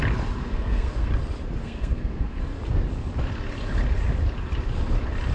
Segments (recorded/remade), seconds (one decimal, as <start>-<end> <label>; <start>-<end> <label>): 0.0-0.4 recorded; 0.4-1.1 remade; 1.1-1.6 recorded; 1.6-2.4 remade; 2.4-5.3 recorded